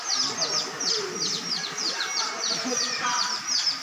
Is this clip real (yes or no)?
no